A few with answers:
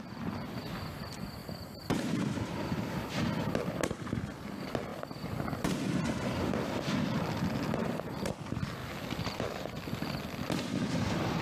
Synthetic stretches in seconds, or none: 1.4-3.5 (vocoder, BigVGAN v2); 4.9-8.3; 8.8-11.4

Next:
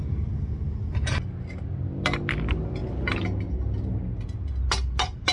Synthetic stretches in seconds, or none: none

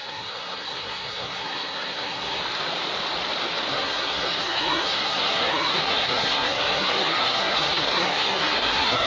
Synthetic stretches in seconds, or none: 0.0-2.4 (codec, SNAC); 3.7-9.1

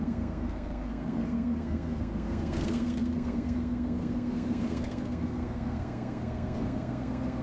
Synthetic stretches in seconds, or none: 0.0-7.4 (codec, SNAC)

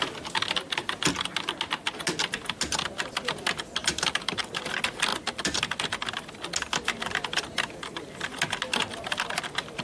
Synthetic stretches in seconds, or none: 3.8-4.4 (vocoder, BigVGAN v2)